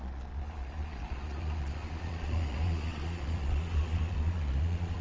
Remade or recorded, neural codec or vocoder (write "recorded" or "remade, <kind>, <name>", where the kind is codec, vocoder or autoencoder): remade, vocoder, Vocos